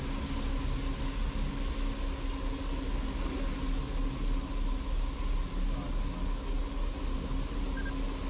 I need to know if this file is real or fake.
real